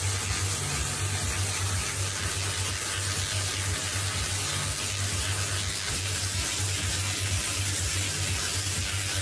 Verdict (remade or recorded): recorded